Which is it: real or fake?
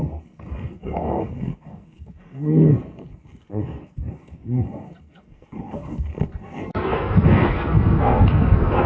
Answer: fake